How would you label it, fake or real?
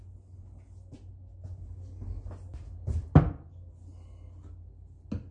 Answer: real